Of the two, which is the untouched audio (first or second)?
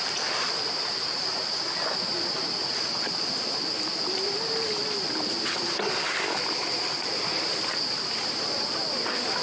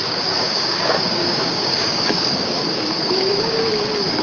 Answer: first